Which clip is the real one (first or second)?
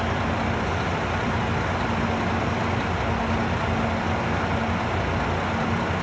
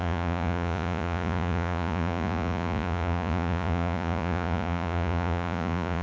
first